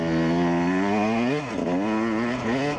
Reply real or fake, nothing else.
real